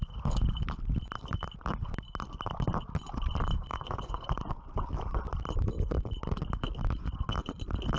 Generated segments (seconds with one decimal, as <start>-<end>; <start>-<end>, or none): 3.7-4.3